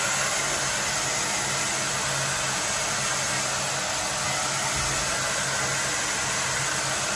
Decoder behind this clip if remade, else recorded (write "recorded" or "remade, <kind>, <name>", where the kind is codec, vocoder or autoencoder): recorded